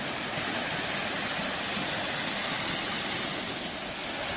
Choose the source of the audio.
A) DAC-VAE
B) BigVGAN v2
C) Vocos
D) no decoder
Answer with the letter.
D